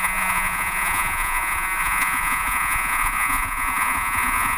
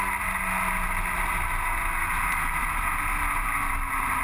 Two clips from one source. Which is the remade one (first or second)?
first